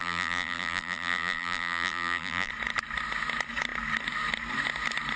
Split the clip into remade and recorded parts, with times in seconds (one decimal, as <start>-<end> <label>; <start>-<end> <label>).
0.0-2.5 remade; 2.5-5.2 recorded